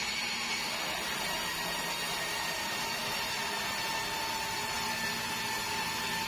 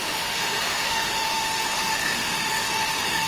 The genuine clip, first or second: first